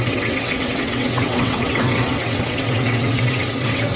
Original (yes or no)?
no